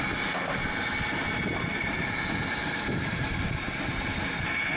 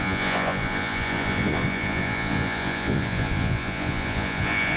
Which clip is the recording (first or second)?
first